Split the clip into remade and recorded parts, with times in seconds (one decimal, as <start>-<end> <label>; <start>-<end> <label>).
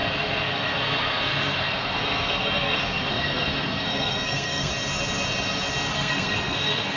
0.0-4.7 remade; 4.7-5.9 recorded; 5.9-7.0 remade